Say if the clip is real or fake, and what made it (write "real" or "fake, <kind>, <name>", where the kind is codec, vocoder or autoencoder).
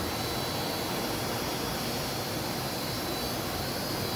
real